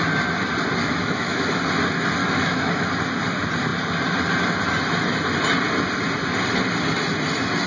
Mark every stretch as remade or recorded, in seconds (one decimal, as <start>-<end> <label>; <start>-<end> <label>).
0.0-0.8 recorded; 0.8-1.6 remade; 1.6-2.2 recorded; 2.2-2.9 remade; 2.9-7.7 recorded